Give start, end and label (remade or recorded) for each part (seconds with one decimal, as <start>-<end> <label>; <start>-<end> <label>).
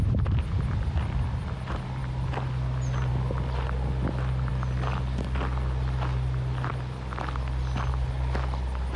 0.0-9.0 recorded